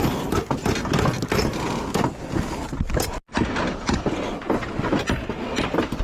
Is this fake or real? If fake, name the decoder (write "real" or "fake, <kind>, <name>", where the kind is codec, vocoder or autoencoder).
real